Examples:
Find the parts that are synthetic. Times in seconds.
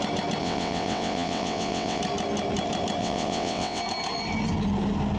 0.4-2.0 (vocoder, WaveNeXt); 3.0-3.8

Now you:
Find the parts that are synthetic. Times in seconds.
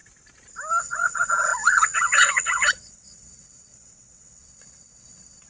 0.8-5.5 (vocoder, WaveNeXt)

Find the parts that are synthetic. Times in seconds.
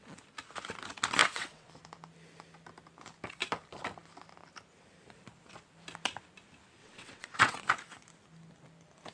1.2-1.7 (vocoder, WaveNeXt); 6.8-7.7